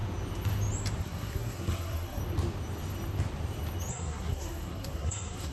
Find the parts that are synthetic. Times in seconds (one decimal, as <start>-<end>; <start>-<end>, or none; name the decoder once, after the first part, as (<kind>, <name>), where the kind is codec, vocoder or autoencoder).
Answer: 1.0-2.2 (codec, SNAC); 3.9-5.5